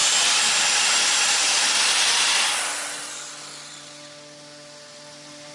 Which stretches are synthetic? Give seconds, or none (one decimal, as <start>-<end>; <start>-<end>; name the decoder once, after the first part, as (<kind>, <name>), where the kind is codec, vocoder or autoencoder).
none